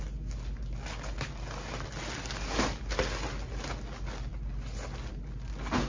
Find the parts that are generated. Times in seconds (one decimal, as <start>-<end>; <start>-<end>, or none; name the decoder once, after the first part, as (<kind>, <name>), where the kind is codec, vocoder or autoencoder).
none